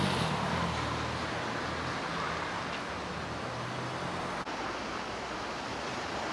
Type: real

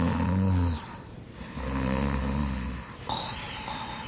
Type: real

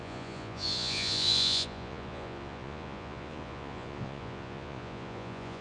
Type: fake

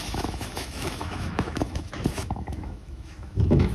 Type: fake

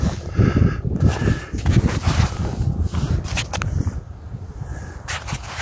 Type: real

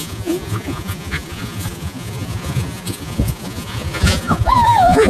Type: fake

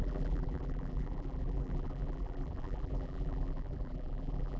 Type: fake